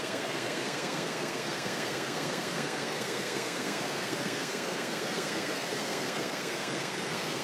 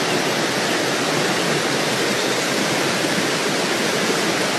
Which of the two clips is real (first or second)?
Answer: second